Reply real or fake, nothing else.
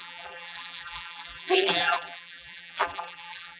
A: fake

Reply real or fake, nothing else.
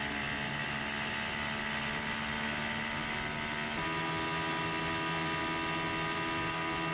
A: real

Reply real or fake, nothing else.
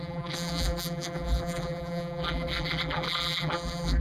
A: fake